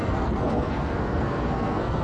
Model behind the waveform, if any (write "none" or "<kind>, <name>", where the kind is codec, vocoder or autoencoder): codec, SNAC